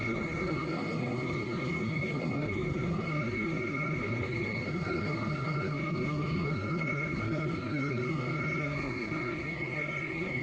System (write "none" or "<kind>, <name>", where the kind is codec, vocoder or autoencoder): codec, SNAC